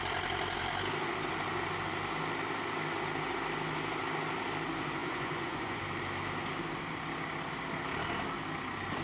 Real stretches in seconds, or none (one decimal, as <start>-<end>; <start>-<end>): 0.0-5.0; 5.8-9.0